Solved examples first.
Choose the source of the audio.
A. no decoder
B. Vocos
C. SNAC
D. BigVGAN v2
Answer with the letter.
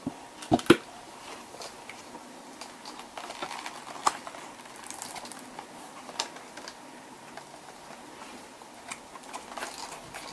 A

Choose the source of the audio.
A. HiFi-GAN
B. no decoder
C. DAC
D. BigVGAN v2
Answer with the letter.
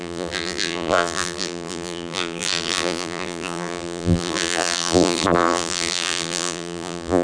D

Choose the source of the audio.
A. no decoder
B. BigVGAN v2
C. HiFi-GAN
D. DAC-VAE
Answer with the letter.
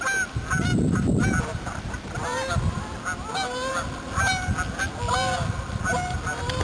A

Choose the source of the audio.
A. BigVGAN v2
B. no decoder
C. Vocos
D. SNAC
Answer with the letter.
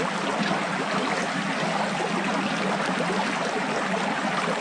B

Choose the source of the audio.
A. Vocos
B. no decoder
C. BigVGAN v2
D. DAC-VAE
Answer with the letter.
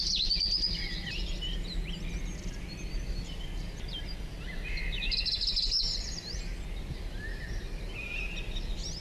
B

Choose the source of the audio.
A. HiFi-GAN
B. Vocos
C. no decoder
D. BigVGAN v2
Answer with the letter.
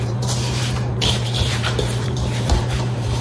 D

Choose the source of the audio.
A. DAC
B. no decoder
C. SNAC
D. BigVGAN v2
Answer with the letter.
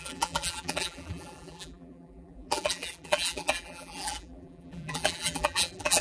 D